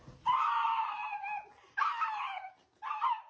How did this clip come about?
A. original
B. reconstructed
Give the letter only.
A